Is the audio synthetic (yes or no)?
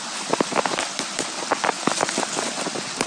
no